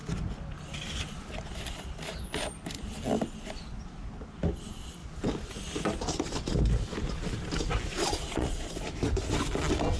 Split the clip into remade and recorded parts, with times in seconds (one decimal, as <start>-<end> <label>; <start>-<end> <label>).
0.0-7.9 recorded; 7.9-8.7 remade; 8.7-10.0 recorded